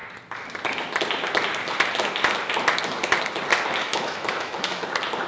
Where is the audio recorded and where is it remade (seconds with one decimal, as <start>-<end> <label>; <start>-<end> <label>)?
0.0-3.8 recorded; 3.8-4.8 remade; 4.8-5.3 recorded